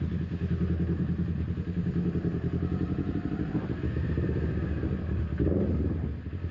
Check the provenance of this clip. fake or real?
real